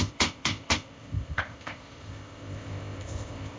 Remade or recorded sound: remade